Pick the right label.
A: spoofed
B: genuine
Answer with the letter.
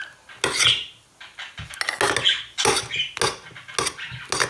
B